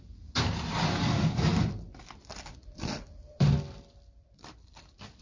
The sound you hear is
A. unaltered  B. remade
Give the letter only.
B